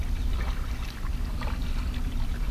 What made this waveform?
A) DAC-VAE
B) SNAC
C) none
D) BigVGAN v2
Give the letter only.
C